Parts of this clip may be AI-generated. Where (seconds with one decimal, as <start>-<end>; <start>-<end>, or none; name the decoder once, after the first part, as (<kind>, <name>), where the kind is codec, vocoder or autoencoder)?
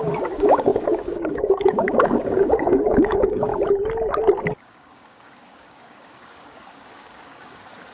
0.0-3.5 (codec, DAC); 4.6-7.9